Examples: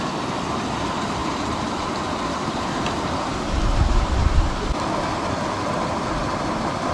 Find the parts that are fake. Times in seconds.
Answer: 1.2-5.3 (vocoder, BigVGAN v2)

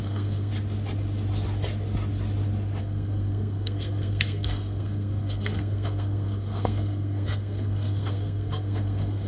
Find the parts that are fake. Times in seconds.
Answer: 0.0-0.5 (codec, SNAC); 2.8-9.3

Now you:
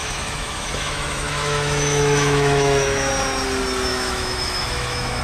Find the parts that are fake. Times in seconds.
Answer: 0.0-3.1 (autoencoder, DAC-VAE); 3.9-5.2